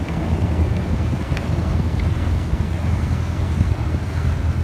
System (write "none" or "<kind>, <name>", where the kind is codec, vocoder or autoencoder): codec, SNAC